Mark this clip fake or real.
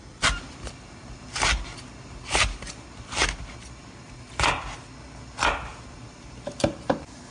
real